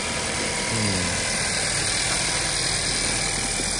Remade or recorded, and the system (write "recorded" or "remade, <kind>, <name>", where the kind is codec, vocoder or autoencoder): recorded